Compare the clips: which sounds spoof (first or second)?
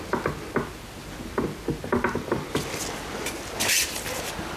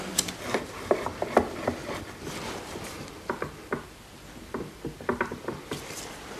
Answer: second